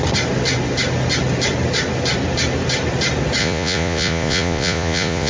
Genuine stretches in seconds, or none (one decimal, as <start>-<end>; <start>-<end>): 0.0-3.4